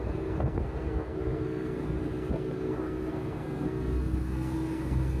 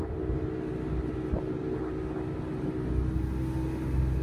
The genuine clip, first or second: second